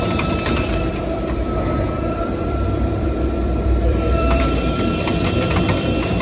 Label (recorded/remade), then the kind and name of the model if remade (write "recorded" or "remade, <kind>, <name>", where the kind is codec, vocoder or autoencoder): remade, vocoder, BigVGAN v2